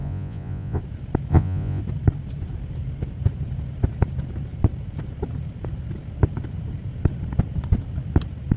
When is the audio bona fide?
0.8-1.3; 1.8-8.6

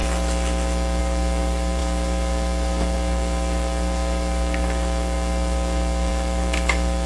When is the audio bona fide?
0.0-1.0

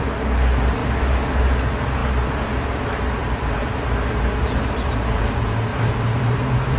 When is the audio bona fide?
0.0-0.8; 1.4-5.7

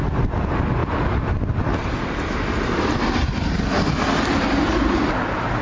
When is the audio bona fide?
0.0-5.6

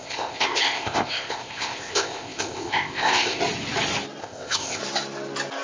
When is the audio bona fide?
3.4-4.2; 4.8-5.6

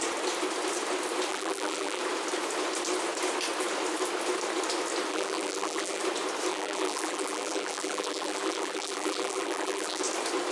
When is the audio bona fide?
0.0-1.3; 2.0-5.1; 6.0-6.5; 10.0-10.5

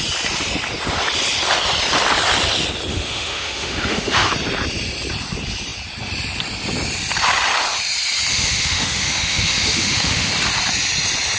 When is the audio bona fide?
0.0-2.9; 4.3-8.3; 10.3-11.4